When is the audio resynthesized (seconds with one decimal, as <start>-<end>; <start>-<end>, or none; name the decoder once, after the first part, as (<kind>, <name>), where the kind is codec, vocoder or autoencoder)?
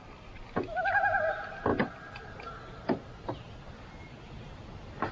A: none